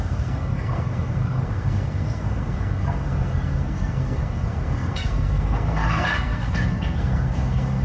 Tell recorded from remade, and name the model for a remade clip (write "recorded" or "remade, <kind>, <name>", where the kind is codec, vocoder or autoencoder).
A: remade, codec, SNAC